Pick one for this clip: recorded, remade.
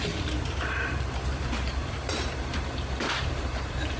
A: remade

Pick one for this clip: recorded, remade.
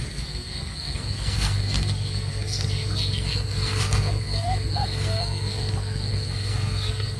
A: remade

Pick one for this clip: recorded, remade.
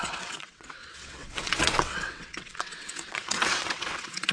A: remade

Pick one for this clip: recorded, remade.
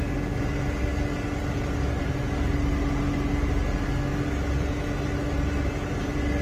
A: recorded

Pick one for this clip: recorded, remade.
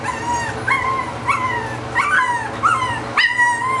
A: recorded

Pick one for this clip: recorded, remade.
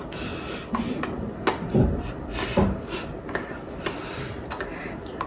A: recorded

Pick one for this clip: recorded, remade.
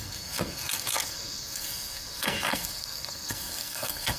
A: remade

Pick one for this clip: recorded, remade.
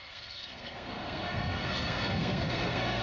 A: remade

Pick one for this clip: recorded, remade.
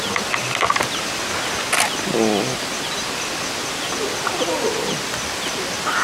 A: recorded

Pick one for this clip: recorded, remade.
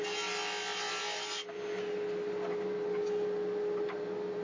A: recorded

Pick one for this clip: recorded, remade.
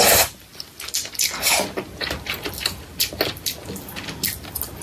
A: recorded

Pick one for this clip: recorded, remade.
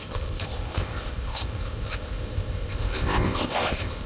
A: remade